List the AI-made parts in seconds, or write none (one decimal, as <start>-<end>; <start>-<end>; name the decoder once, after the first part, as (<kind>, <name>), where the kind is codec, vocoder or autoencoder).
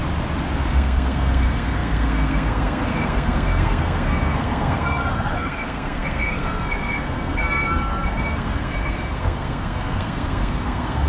0.7-11.1 (codec, SNAC)